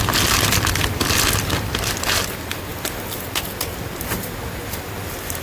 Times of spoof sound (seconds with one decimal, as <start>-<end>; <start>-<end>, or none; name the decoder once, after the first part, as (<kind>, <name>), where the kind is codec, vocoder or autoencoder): none